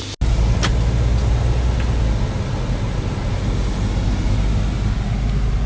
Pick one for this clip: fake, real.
real